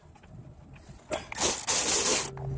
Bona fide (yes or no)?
yes